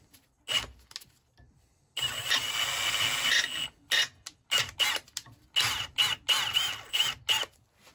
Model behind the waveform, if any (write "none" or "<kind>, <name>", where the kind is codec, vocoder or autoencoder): none